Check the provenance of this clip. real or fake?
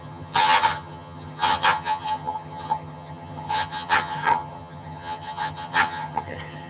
fake